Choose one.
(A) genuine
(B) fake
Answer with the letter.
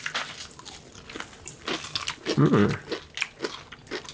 A